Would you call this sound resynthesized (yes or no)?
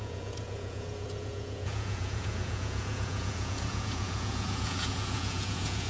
yes